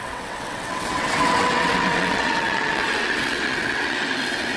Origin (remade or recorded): remade